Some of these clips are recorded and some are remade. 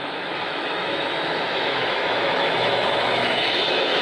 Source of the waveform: remade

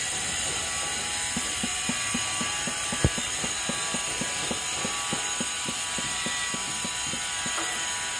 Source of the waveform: recorded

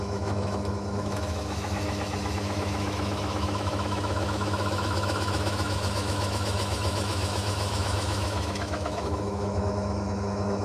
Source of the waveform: remade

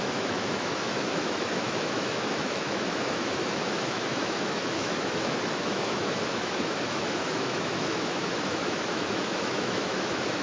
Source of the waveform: remade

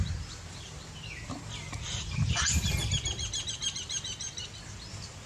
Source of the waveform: recorded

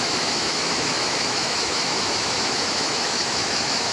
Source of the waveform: remade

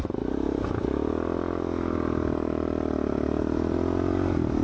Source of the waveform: recorded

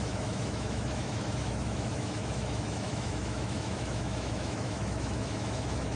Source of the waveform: remade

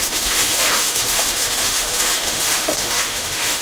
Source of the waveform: remade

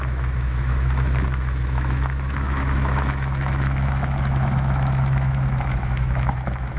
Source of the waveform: remade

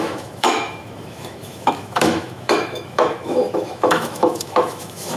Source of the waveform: remade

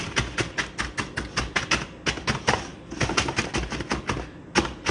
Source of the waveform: recorded